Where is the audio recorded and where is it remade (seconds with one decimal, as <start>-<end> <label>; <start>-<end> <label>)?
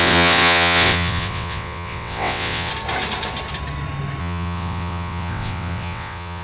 0.0-2.7 remade; 2.7-4.2 recorded; 4.2-6.4 remade